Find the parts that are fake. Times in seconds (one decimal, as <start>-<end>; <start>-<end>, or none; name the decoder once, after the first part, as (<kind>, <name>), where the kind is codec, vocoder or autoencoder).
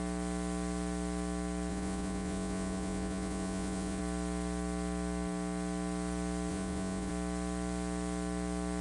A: 1.7-4.0 (vocoder, Vocos); 6.5-7.1